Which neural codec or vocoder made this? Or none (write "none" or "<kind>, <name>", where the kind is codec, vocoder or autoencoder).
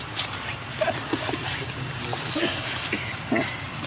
none